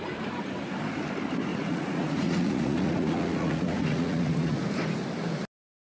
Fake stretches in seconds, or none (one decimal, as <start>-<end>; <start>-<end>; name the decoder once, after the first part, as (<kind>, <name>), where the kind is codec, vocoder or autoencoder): 1.5-4.7 (vocoder, Vocos)